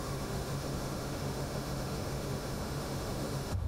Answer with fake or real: fake